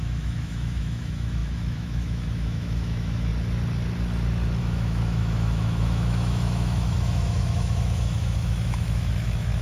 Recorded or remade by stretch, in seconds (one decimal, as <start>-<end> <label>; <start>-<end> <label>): 0.0-3.3 remade; 3.3-4.6 recorded; 4.6-9.6 remade